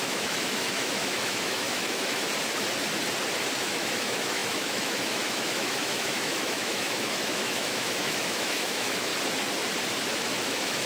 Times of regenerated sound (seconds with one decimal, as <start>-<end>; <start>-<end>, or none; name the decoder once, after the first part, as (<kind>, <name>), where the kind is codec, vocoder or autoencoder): 0.0-2.3 (autoencoder, DAC-VAE); 3.6-9.1; 10.1-10.9